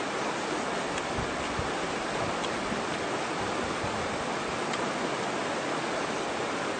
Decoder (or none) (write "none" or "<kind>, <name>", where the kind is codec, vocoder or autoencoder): none